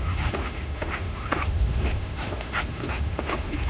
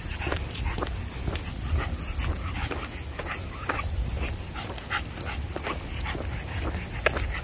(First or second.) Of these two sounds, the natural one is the second